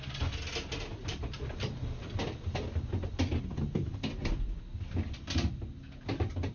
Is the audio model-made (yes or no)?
no